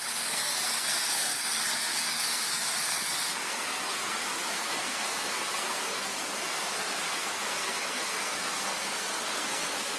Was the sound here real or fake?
fake